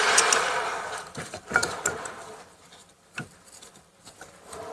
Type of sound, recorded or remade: remade